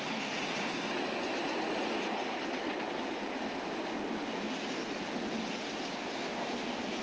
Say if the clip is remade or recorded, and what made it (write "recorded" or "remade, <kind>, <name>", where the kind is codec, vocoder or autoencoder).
recorded